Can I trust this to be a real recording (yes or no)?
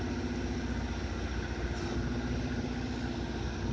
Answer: yes